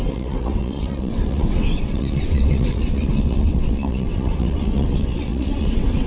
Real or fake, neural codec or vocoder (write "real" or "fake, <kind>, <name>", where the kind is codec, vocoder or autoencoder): fake, vocoder, WaveNeXt